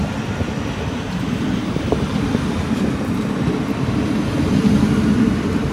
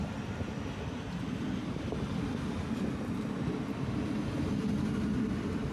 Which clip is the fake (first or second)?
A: first